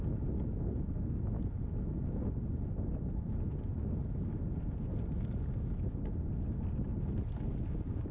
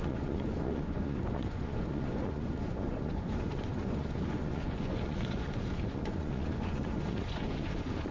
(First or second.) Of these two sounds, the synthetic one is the second